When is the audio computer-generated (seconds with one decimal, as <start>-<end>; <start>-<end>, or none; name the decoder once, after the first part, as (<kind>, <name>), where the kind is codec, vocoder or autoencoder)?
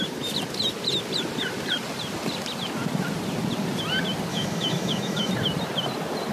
4.3-5.3 (autoencoder, DAC-VAE)